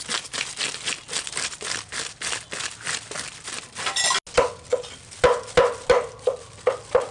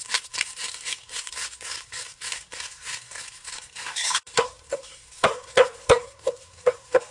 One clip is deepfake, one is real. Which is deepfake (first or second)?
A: second